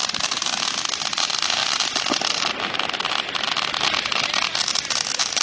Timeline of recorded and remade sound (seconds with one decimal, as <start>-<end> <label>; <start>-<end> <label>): 0.0-5.4 recorded